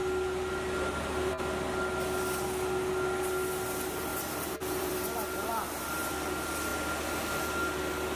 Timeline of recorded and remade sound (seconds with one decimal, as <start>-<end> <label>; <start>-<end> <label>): 0.0-4.1 recorded; 4.1-6.1 remade; 6.1-8.2 recorded